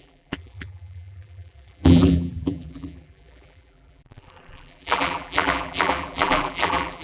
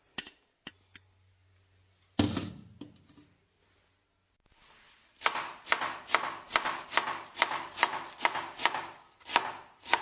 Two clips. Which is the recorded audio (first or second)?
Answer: second